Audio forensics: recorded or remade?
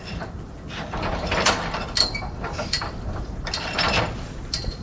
recorded